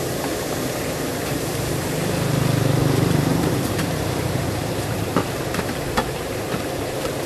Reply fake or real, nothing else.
fake